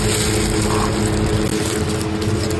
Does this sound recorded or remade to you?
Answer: recorded